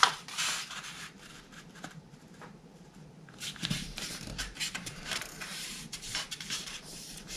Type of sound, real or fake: fake